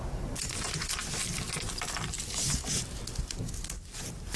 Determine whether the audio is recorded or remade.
recorded